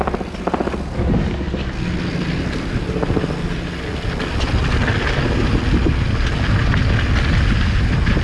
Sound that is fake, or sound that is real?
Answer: real